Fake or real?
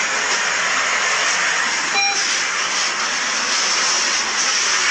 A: real